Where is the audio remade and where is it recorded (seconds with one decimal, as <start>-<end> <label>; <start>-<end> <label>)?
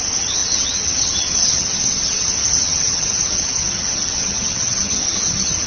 0.0-5.7 remade